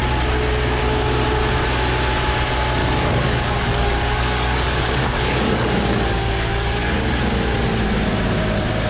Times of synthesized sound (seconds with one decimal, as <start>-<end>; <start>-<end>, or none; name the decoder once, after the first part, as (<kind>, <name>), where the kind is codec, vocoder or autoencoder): 2.8-7.2 (codec, DAC)